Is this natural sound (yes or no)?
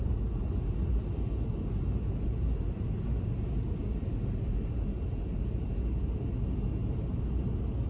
yes